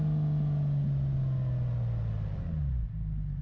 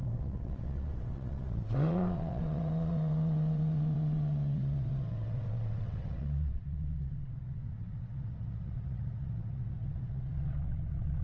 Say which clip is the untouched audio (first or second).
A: first